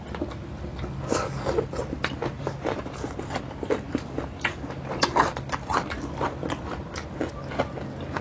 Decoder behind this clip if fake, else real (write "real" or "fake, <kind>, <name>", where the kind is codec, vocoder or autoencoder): real